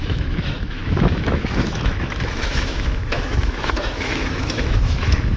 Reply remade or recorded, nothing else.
remade